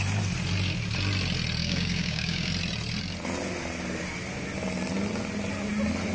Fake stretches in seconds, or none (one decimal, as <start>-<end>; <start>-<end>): 1.6-2.5